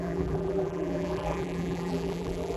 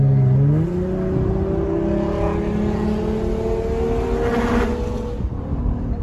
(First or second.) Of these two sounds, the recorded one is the second